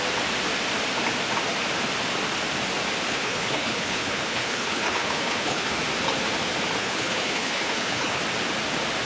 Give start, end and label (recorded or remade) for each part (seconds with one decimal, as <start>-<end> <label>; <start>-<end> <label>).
0.0-3.1 recorded; 3.1-5.8 remade; 5.8-6.8 recorded; 6.8-8.2 remade; 8.2-9.1 recorded